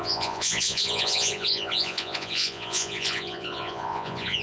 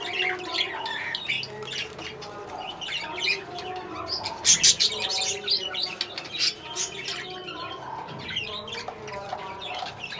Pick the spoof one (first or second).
first